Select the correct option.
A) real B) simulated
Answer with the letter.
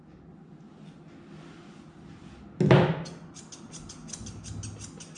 A